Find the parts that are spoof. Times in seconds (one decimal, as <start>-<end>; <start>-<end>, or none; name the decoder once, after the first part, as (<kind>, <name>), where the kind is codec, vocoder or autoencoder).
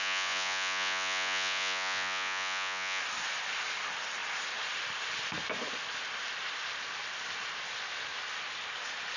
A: 0.0-3.0 (vocoder, Vocos)